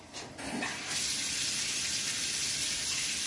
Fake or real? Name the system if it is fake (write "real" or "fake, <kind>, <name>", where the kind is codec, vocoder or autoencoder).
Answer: real